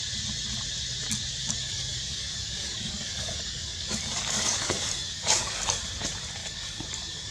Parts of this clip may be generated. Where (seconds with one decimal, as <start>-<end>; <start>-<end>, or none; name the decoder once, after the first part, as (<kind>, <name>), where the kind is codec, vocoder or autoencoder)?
1.4-5.8 (codec, DAC); 6.4-7.3